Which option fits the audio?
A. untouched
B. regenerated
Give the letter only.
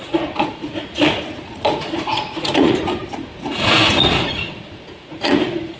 B